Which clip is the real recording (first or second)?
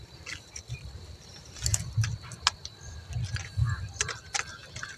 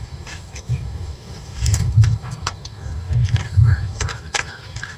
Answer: first